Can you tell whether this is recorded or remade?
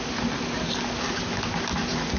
recorded